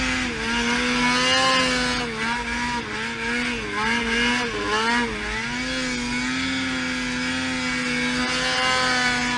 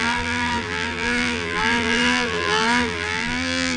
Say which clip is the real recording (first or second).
first